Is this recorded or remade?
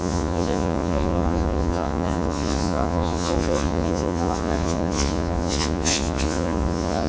remade